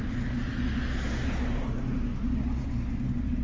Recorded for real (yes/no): yes